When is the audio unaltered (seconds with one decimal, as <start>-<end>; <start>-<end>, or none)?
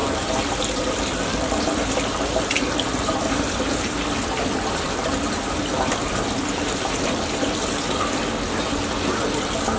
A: 0.0-9.8